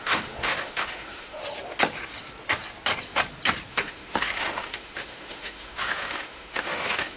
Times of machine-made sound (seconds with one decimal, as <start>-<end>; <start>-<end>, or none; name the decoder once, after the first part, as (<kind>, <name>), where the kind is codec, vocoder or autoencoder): 0.0-1.4 (autoencoder, DAC-VAE); 3.7-7.2